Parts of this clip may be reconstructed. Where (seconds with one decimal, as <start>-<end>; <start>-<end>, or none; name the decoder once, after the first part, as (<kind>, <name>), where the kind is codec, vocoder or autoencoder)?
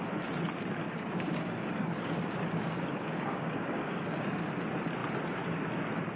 0.8-4.5 (codec, DAC)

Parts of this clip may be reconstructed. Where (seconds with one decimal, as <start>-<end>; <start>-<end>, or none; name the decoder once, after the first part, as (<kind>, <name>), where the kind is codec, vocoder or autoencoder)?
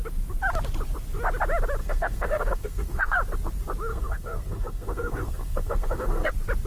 1.8-3.2 (codec, SNAC); 3.9-6.3